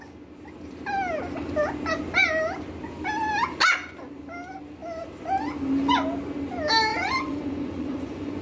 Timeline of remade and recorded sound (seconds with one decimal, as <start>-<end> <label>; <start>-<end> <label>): 0.0-6.9 recorded; 6.9-8.4 remade